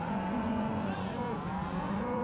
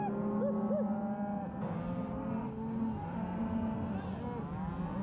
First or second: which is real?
second